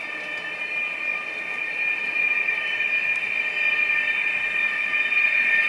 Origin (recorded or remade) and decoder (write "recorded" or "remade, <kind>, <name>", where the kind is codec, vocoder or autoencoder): recorded